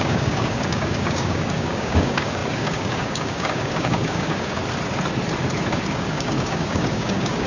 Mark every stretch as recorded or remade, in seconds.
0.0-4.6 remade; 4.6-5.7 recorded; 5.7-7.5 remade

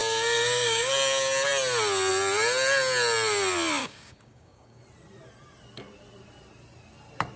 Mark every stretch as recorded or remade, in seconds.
0.0-0.9 remade; 0.9-3.8 recorded; 3.8-4.8 remade; 4.8-7.4 recorded

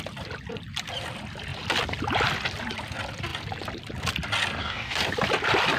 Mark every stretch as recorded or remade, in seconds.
0.0-4.6 recorded; 4.6-5.1 remade; 5.1-5.8 recorded

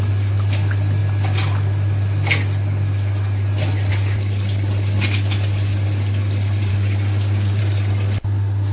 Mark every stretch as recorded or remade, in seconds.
0.0-6.7 recorded; 6.7-7.6 remade; 7.6-8.7 recorded

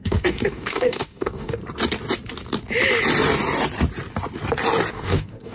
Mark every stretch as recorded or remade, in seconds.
0.0-1.6 remade; 1.6-4.9 recorded; 4.9-5.5 remade

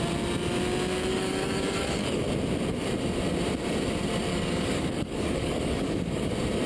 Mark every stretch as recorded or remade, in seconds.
0.0-1.1 recorded; 1.1-2.2 remade; 2.2-4.3 recorded; 4.3-6.3 remade; 6.3-6.7 recorded

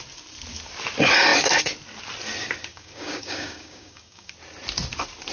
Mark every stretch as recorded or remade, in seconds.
0.0-2.7 recorded; 2.7-4.3 remade; 4.3-5.3 recorded

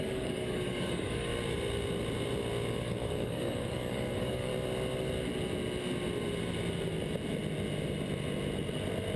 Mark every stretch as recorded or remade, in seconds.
0.0-1.3 remade; 1.3-2.7 recorded; 2.7-4.5 remade; 4.5-9.2 recorded